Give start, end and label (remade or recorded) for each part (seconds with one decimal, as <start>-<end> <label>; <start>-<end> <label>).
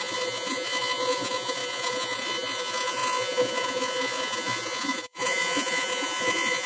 0.0-6.7 remade